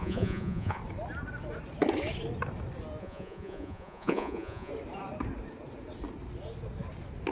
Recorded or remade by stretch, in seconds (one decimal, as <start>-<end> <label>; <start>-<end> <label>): 0.0-0.8 remade; 0.8-3.0 recorded; 3.0-4.7 remade; 4.7-7.3 recorded

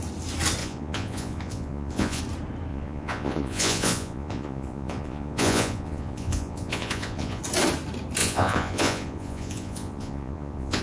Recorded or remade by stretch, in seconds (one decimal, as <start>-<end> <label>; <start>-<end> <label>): 0.0-0.6 recorded; 0.6-2.2 remade; 2.2-2.7 recorded; 2.7-7.4 remade; 7.4-8.2 recorded; 8.2-10.8 remade

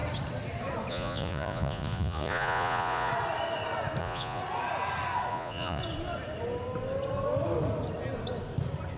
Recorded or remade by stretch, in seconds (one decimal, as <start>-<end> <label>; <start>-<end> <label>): 0.0-0.9 recorded; 0.9-3.1 remade; 3.1-4.0 recorded; 4.0-4.4 remade; 4.4-5.3 recorded; 5.3-5.8 remade; 5.8-9.0 recorded

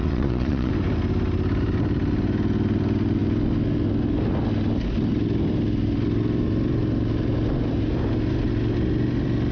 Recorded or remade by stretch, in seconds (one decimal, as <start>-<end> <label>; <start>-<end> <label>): 0.0-0.7 remade; 0.7-9.5 recorded

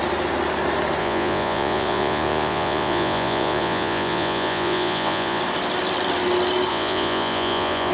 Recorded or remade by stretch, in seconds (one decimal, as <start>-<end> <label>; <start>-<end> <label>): 0.0-1.0 recorded; 1.0-5.4 remade; 5.4-6.7 recorded; 6.7-7.9 remade

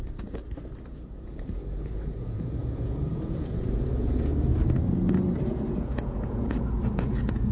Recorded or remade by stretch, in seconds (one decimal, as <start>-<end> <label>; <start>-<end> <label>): 0.0-0.4 remade; 0.4-1.1 recorded; 1.1-4.5 remade; 4.5-5.4 recorded; 5.4-7.5 remade

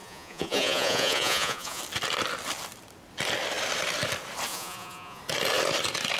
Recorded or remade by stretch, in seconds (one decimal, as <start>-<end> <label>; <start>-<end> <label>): 0.0-1.8 remade; 1.8-4.5 recorded; 4.5-5.2 remade; 5.2-6.2 recorded